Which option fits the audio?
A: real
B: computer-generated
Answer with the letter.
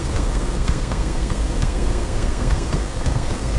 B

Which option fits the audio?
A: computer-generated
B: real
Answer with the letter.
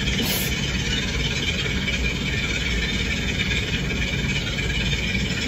B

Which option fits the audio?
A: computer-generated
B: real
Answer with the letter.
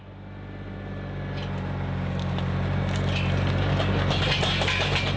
B